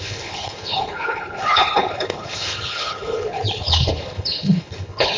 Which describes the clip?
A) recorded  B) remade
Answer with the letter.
B